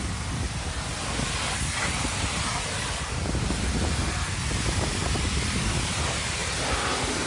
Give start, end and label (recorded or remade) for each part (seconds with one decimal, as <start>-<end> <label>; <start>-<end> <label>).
0.0-0.9 remade; 0.9-4.7 recorded; 4.7-6.4 remade; 6.4-7.3 recorded